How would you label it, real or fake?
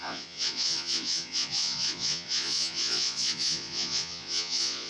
fake